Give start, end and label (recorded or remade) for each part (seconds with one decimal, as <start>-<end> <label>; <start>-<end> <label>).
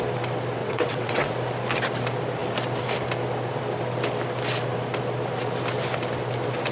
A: 0.0-0.6 recorded; 0.6-1.3 remade; 1.3-6.7 recorded